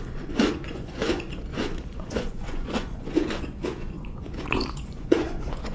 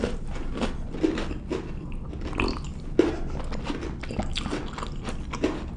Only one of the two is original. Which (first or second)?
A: second